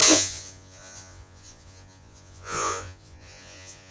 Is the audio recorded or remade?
remade